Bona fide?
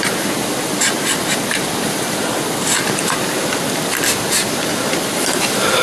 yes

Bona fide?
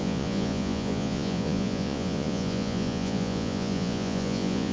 no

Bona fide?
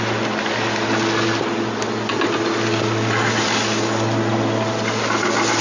yes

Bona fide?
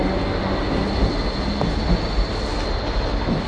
yes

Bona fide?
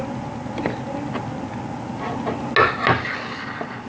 yes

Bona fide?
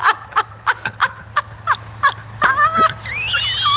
yes